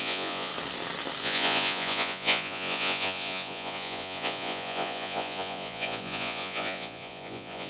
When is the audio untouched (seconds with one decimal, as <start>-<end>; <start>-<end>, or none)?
0.5-1.2